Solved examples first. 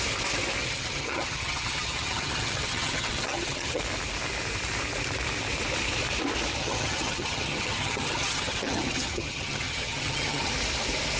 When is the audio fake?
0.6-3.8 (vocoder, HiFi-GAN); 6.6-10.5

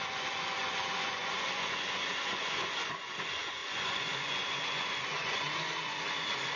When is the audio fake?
0.0-6.6 (vocoder, Vocos)